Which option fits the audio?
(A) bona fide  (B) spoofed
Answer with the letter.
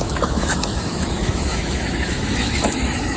B